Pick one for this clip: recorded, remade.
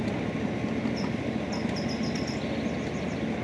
recorded